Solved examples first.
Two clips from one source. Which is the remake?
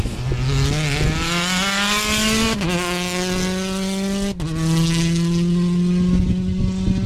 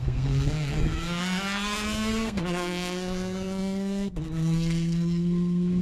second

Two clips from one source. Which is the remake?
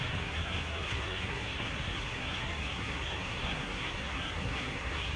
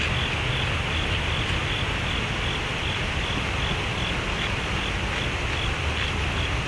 first